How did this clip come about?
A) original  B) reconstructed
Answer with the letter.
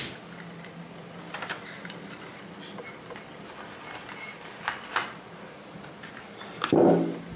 A